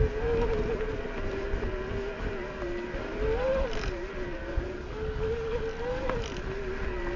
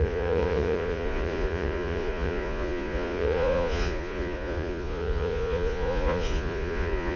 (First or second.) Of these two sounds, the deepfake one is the second